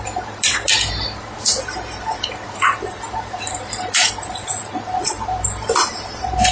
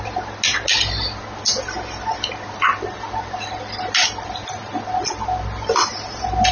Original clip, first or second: second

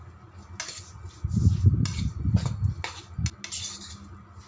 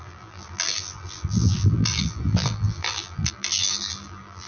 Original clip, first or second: first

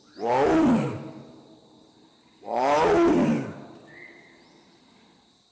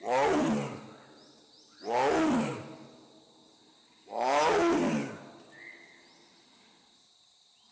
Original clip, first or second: second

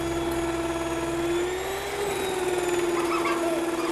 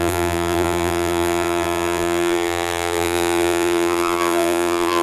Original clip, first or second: first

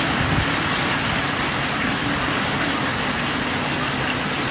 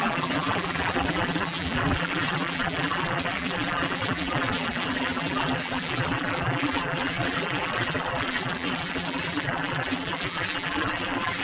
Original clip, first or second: first